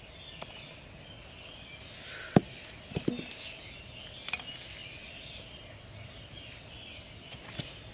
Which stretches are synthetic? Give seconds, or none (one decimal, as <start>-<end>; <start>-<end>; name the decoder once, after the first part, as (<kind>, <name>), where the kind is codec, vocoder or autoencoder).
none